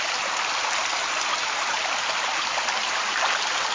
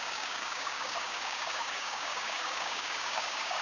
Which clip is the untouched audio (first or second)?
first